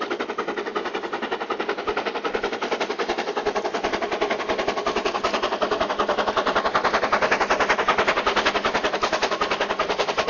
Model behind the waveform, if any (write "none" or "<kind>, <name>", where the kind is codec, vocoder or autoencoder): none